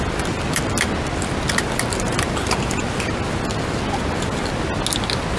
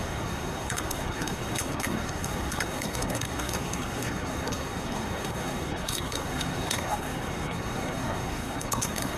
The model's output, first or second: second